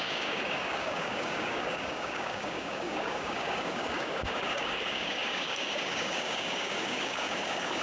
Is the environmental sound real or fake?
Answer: fake